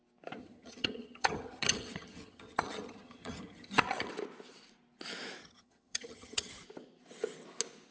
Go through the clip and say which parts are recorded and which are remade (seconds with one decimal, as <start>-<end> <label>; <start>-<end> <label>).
0.0-0.4 recorded; 0.4-4.1 remade; 4.1-5.4 recorded; 5.4-6.5 remade; 6.5-7.9 recorded